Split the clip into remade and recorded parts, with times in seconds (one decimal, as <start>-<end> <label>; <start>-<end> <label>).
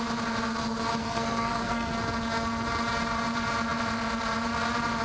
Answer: 0.0-1.0 recorded; 1.0-1.9 remade; 1.9-5.0 recorded